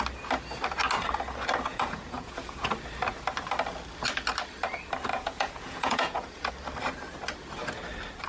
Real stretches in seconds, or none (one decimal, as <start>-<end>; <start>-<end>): 0.0-1.7; 2.7-5.1; 6.5-8.3